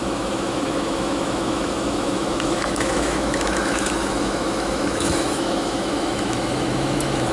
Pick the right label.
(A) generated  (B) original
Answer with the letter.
A